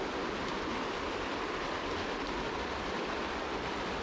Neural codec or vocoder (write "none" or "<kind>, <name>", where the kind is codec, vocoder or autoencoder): none